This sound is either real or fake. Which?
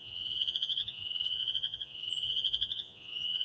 fake